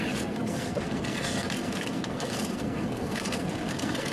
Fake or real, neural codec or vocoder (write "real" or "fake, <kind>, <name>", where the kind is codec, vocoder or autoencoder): fake, codec, SNAC